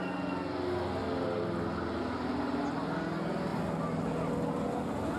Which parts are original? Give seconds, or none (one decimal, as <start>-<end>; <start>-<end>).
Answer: 0.0-5.2